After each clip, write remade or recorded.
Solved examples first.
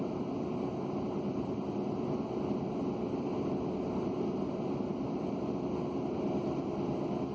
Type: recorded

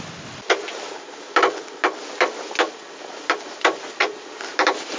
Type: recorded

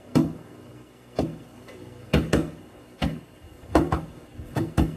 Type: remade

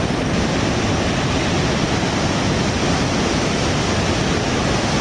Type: recorded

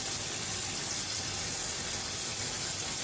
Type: recorded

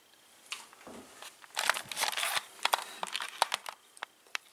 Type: recorded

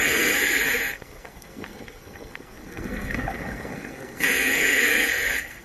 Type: remade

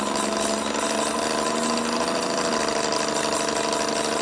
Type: recorded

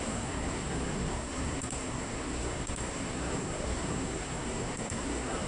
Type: remade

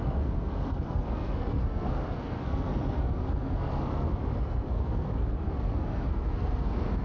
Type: remade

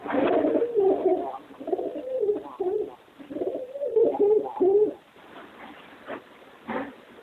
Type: recorded